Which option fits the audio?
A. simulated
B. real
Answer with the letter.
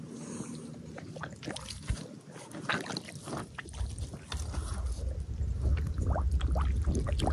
B